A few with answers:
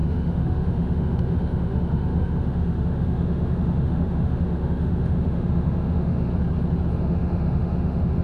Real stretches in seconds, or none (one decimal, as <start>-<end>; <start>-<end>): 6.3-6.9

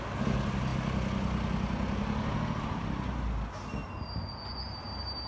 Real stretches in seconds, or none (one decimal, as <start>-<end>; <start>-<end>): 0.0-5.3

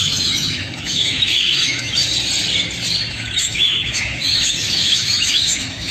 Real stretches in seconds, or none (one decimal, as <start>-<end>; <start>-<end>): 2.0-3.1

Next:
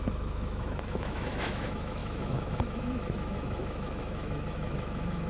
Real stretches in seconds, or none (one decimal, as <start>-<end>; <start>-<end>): none

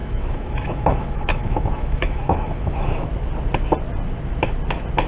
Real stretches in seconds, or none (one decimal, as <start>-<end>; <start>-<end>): 3.1-5.1

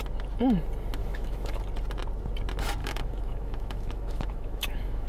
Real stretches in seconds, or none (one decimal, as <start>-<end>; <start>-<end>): 0.0-1.0; 1.6-2.8